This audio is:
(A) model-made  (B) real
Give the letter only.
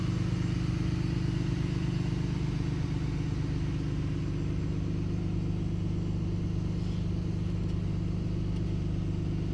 B